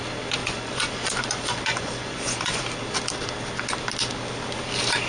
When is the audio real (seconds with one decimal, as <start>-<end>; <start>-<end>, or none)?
0.0-0.4; 2.6-5.1